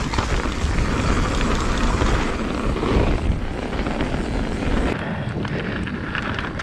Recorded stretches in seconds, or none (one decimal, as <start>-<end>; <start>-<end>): 3.7-6.6